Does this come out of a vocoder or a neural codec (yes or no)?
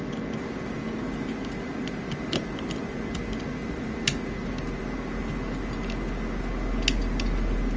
no